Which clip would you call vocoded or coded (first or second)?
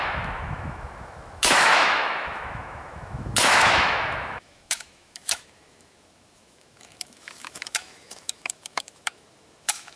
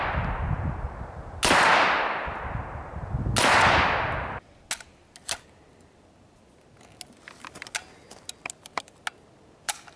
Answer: first